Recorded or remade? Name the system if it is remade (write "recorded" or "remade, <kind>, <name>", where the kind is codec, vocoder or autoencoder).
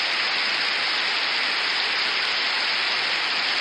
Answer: recorded